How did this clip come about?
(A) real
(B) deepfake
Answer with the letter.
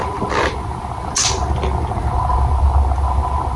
A